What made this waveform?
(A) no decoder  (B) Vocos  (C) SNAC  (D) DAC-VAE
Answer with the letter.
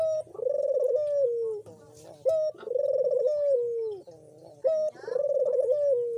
A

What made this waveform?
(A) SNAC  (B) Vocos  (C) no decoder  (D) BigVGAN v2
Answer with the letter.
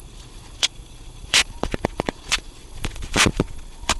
B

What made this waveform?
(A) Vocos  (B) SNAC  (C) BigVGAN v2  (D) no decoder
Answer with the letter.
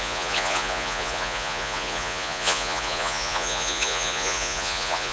A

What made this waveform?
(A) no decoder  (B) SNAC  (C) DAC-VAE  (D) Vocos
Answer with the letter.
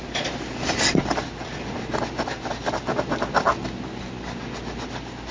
A